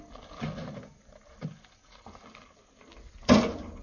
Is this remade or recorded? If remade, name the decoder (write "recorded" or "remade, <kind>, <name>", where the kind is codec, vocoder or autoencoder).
recorded